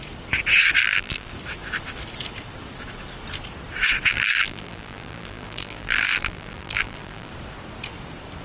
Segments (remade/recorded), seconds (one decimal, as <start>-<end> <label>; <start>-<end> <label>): 0.0-0.8 recorded; 0.8-1.3 remade; 1.3-4.1 recorded; 4.1-7.3 remade; 7.3-8.4 recorded